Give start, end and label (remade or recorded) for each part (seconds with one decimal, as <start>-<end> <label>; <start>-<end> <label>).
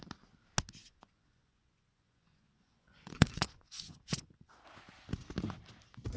0.0-0.8 recorded; 0.8-4.5 remade; 4.5-6.2 recorded